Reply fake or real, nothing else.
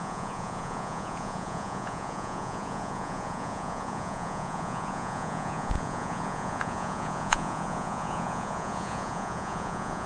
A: fake